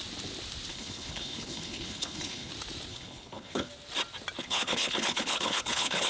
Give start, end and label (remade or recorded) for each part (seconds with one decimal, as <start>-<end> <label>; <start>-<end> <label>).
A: 0.0-0.7 recorded; 0.7-2.5 remade; 2.5-2.9 recorded; 2.9-3.7 remade; 3.7-4.4 recorded; 4.4-6.1 remade